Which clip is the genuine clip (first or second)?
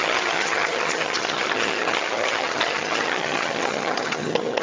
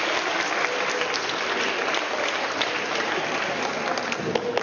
second